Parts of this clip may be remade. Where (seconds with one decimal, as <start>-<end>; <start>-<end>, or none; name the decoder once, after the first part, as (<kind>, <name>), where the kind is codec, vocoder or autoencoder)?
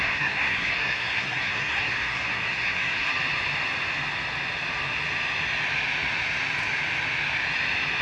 0.0-3.1 (codec, SNAC)